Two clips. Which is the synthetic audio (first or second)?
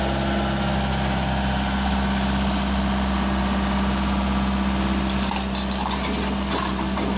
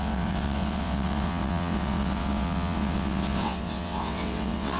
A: second